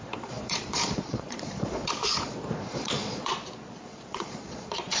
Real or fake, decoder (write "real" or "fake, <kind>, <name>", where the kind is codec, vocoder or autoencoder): fake, vocoder, Vocos